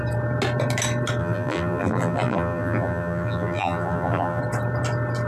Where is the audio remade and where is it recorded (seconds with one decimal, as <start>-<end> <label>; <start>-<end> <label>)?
0.0-1.2 recorded; 1.2-4.4 remade; 4.4-5.3 recorded